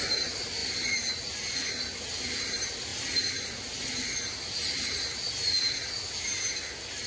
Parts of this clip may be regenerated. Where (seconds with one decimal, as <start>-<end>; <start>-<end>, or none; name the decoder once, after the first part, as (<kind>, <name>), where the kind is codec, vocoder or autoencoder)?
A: none